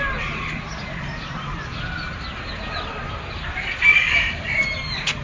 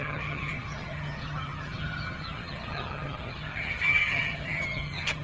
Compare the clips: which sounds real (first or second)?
first